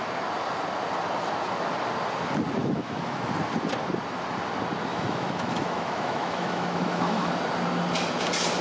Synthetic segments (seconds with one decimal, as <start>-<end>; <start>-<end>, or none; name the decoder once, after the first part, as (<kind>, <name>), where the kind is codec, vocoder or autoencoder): 2.6-3.3 (autoencoder, DAC-VAE); 4.9-7.3